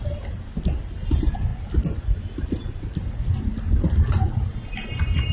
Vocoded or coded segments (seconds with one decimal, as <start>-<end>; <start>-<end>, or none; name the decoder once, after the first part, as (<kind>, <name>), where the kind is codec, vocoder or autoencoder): none